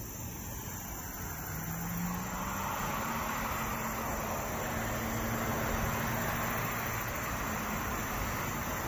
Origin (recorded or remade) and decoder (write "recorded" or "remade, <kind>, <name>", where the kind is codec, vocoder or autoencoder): recorded